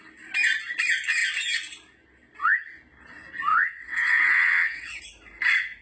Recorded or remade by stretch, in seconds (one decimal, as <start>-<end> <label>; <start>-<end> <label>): 0.0-3.5 recorded; 3.5-5.0 remade; 5.0-5.8 recorded